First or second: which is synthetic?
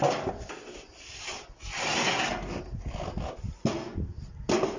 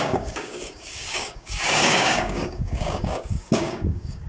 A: second